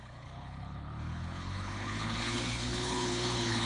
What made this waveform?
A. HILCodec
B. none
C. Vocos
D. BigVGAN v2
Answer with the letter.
A